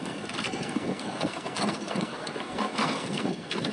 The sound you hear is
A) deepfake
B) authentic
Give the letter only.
A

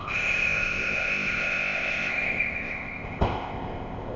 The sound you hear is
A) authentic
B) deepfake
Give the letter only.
B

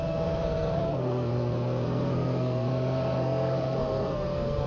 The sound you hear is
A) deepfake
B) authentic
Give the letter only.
A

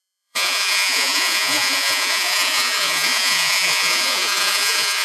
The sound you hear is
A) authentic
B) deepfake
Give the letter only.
B